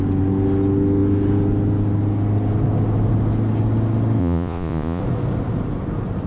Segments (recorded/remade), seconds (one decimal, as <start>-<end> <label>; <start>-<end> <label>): 0.0-4.2 recorded; 4.2-5.0 remade; 5.0-6.3 recorded